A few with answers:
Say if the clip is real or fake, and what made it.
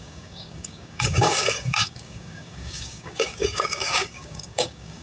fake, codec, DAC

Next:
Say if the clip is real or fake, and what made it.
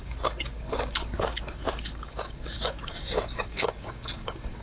fake, codec, DAC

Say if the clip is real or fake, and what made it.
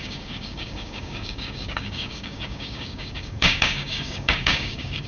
fake, codec, DAC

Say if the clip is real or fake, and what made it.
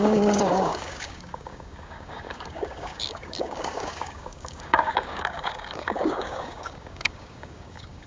fake, codec, DAC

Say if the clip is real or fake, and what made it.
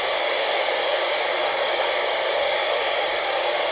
fake, codec, DAC